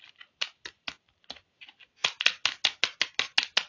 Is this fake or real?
real